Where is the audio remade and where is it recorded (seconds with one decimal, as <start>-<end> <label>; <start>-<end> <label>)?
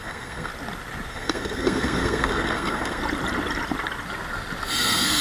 0.0-0.5 remade; 0.5-1.1 recorded; 1.1-3.0 remade; 3.0-4.7 recorded; 4.7-5.2 remade